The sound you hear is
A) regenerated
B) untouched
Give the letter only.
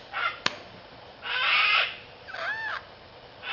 B